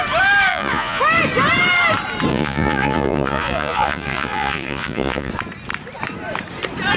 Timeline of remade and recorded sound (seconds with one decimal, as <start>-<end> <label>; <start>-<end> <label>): 0.0-0.5 recorded; 0.5-1.0 remade; 1.0-2.3 recorded; 2.3-5.3 remade; 5.3-7.0 recorded